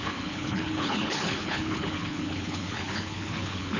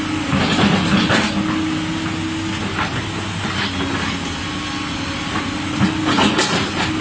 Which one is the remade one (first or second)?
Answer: first